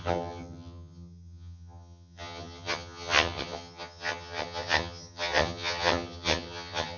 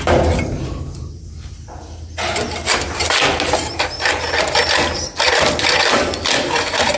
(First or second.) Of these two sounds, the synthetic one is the first